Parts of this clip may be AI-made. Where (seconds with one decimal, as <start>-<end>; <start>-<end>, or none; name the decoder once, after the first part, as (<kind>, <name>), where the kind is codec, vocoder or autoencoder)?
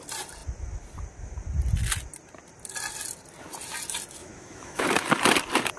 4.2-4.8 (autoencoder, DAC-VAE)